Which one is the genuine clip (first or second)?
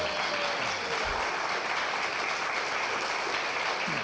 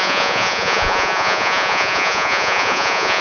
first